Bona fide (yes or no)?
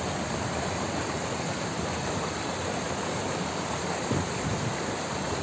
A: no